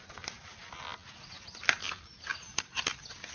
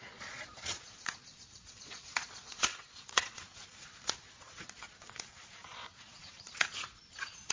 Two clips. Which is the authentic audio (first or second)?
first